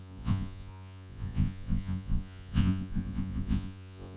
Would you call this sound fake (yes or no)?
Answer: yes